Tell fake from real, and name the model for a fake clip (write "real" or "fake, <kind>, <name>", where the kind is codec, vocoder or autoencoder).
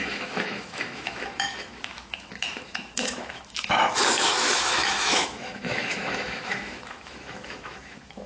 fake, autoencoder, DAC-VAE